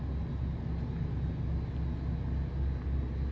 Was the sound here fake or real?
real